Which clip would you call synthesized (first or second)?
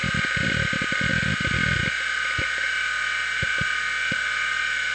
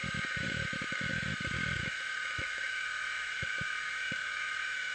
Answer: second